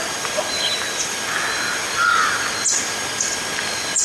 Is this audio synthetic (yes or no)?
no